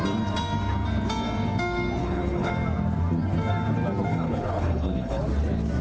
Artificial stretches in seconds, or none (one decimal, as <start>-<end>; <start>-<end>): 2.0-2.5; 4.1-5.2